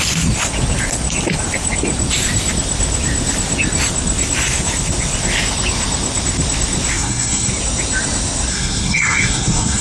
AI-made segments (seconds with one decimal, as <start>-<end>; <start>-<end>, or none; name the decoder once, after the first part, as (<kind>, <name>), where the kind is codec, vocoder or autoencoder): 6.9-7.5 (codec, SNAC); 8.5-9.8